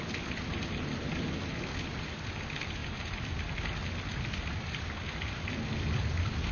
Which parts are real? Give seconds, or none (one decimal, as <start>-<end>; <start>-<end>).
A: 0.0-6.5